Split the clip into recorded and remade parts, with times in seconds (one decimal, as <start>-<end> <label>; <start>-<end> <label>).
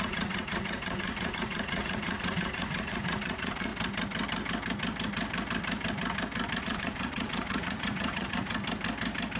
0.0-3.7 remade; 3.7-6.6 recorded; 6.6-8.5 remade; 8.5-9.4 recorded